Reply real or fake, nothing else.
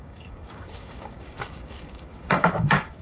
fake